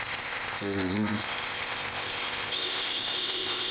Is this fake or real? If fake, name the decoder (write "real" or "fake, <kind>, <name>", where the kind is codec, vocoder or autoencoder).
fake, codec, ZipCodec